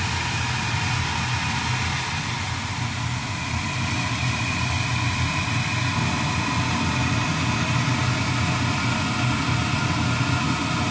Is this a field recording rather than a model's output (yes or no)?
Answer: yes